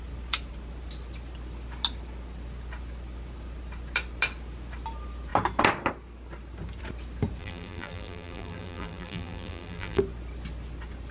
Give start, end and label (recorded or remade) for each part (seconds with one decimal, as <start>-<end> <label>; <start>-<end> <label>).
0.0-7.4 recorded; 7.4-10.0 remade; 10.0-11.1 recorded